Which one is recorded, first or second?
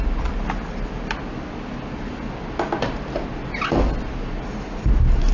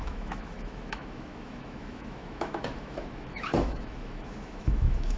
first